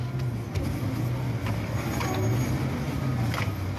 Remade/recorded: recorded